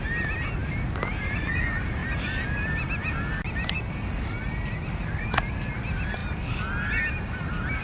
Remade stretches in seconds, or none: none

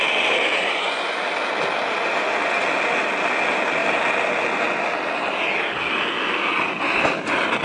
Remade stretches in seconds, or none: 0.6-1.2 (vocoder, Vocos)

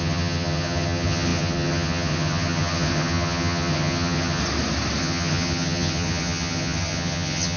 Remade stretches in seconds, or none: 0.0-4.4 (vocoder, HiFi-GAN); 5.0-7.6

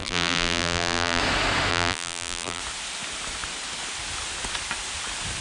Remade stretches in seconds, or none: 0.0-1.2 (vocoder, BigVGAN v2); 1.7-2.6

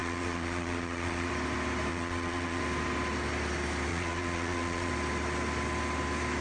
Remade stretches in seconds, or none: 0.0-1.3 (vocoder, Vocos); 1.9-2.6; 3.9-4.9

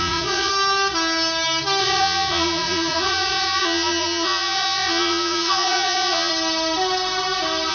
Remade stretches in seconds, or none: 0.0-0.5 (vocoder, Vocos); 1.8-6.3

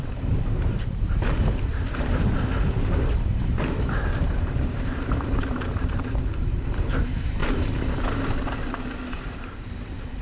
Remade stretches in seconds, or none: 0.0-7.4 (vocoder, BigVGAN v2); 9.1-10.2